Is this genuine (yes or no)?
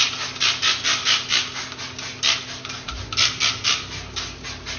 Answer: yes